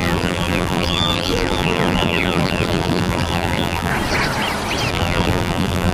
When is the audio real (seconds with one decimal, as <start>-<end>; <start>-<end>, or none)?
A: 3.9-4.9